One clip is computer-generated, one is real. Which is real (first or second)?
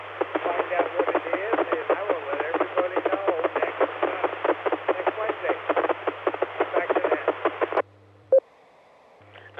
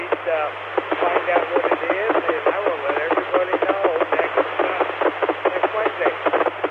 second